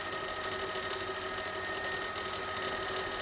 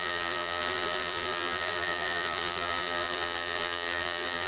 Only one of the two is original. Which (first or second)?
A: first